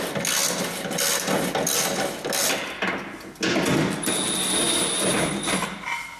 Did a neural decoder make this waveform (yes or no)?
no